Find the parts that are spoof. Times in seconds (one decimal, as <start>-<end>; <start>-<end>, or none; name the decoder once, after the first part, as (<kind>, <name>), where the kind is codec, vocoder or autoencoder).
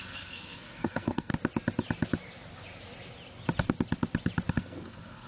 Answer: 0.0-1.3 (codec, SNAC); 4.5-5.3